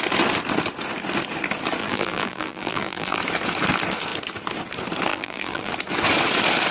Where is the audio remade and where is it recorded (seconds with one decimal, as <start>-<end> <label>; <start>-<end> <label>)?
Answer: 0.0-1.8 recorded; 1.8-3.2 remade; 3.2-5.1 recorded; 5.1-5.7 remade; 5.7-6.7 recorded